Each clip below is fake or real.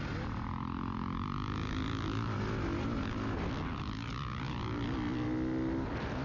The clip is real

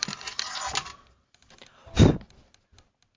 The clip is real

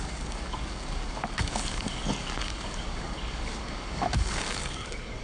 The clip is fake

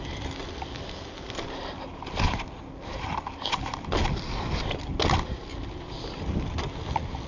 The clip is real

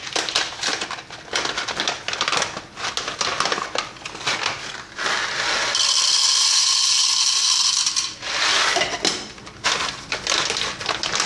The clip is real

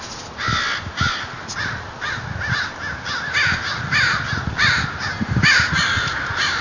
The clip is real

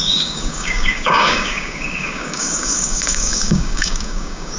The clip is fake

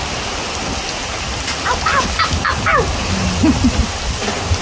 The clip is real